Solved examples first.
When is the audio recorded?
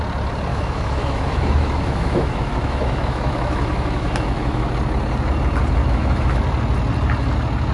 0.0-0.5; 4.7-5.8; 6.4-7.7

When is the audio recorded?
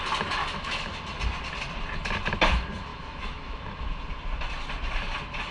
0.0-0.4; 1.0-2.9; 4.0-5.5